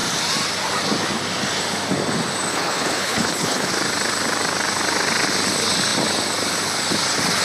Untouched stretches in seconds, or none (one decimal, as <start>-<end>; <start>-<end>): 0.0-2.5; 3.7-7.4

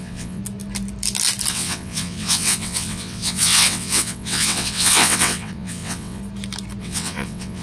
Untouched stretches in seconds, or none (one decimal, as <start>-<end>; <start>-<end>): 0.4-1.5; 6.2-6.8

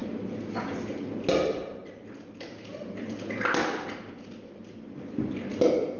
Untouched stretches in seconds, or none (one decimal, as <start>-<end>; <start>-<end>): 0.0-6.0